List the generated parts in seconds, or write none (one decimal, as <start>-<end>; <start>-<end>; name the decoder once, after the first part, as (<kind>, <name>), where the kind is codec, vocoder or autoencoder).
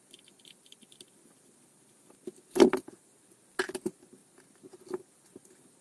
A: none